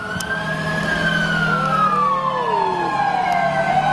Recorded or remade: recorded